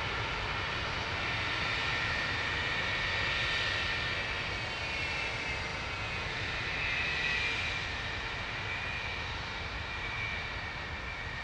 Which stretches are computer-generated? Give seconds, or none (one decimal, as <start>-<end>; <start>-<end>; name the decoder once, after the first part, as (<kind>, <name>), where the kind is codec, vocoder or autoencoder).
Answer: 5.7-6.3 (vocoder, Vocos)